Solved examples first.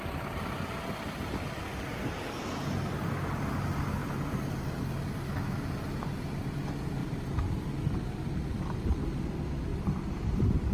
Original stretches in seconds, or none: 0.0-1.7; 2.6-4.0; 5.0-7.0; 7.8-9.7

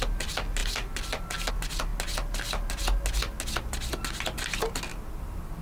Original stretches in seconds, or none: 0.0-5.6

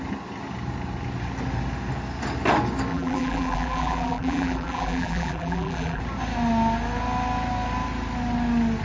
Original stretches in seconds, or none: 0.0-2.9; 6.0-8.8

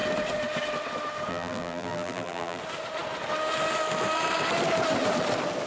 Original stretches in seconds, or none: 0.0-1.3; 2.6-5.7

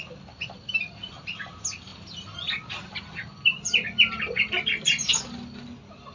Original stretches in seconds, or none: 0.0-6.1